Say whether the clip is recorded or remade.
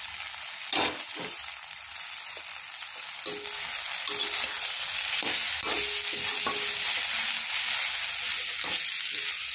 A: recorded